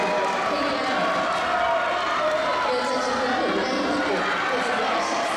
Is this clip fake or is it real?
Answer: real